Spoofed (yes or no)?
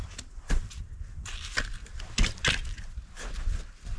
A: no